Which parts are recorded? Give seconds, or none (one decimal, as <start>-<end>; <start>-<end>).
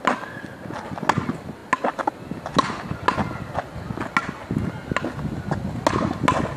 0.0-6.6